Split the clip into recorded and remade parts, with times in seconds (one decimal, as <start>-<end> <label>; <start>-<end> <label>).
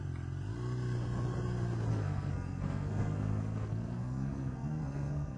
0.0-1.9 recorded; 1.9-5.4 remade